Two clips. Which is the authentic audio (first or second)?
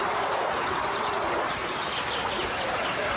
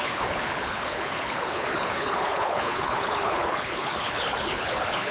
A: first